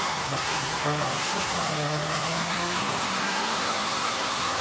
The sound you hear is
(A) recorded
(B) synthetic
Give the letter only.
B